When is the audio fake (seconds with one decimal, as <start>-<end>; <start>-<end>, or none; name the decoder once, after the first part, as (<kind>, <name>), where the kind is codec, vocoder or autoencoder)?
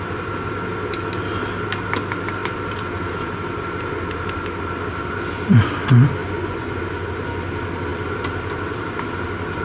6.2-6.8 (vocoder, Vocos)